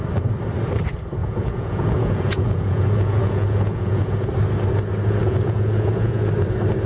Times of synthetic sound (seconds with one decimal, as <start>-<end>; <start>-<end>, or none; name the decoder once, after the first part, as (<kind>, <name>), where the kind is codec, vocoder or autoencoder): 1.2-4.3 (vocoder, Vocos); 5.2-6.3